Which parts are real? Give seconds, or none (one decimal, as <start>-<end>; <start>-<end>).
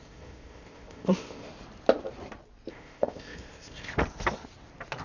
1.5-2.7; 3.9-5.0